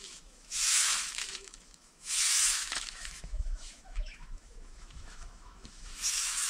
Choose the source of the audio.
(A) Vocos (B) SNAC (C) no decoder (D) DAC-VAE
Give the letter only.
D